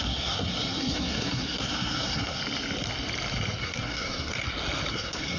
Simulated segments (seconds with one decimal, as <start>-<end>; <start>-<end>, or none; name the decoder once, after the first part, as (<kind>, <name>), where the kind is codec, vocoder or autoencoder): 0.0-2.4 (codec, SNAC); 3.6-4.3; 4.9-5.4